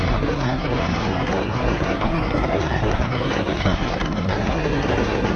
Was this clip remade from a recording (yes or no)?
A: yes